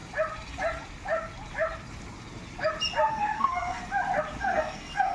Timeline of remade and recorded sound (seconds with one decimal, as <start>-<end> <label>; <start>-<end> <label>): 0.0-3.1 recorded; 3.1-3.8 remade; 3.8-4.4 recorded; 4.4-5.1 remade

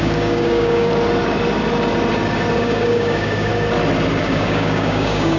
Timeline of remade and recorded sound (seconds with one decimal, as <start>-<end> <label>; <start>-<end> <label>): 0.0-0.9 remade; 0.9-2.6 recorded; 2.6-3.5 remade; 3.5-4.2 recorded; 4.2-5.4 remade